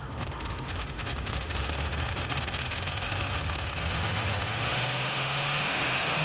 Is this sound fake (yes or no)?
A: yes